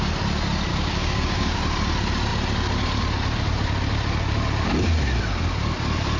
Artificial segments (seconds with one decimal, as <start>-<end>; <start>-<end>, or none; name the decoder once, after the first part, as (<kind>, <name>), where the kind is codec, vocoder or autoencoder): 0.7-1.6 (codec, DAC)